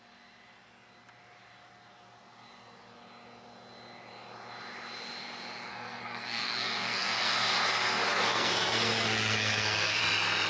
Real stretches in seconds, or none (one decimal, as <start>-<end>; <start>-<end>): 0.0-5.7; 10.0-10.5